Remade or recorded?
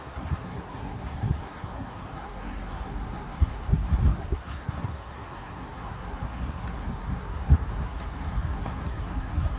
remade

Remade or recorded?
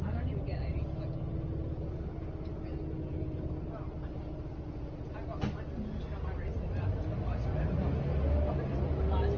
recorded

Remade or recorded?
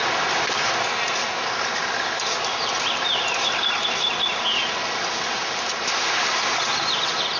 recorded